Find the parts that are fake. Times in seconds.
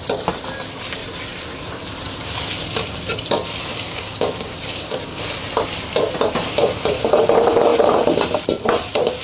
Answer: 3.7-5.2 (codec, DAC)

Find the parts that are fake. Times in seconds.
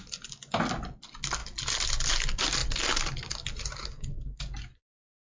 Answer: 3.8-4.4 (codec, SNAC)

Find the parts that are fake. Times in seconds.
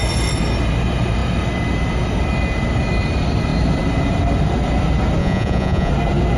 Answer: 5.2-5.9 (vocoder, Vocos)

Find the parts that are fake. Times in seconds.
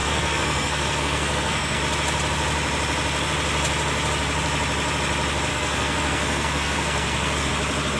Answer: 0.0-1.8 (codec, SNAC); 5.5-7.5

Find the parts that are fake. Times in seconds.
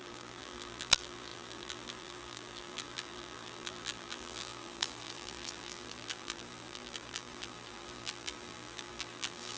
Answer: 0.0-9.6 (vocoder, BigVGAN v2)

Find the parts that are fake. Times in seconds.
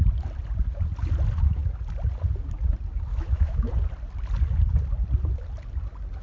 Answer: 3.1-3.7 (autoencoder, DAC-VAE)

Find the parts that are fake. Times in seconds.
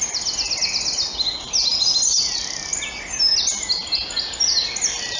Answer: none